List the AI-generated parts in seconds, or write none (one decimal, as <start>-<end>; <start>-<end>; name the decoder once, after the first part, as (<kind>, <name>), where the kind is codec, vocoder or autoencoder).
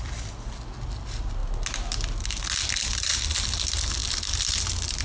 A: none